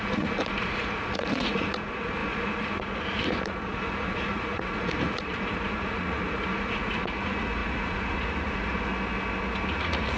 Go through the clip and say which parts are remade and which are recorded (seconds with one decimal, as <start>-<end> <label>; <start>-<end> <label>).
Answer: 0.0-8.9 remade; 8.9-9.7 recorded; 9.7-10.2 remade